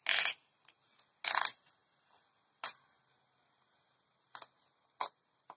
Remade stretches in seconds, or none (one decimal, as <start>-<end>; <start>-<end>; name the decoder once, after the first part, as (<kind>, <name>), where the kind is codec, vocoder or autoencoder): none